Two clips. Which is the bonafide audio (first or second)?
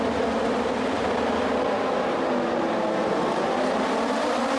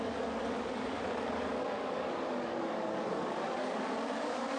first